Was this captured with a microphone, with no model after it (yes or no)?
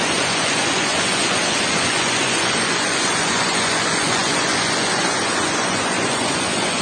no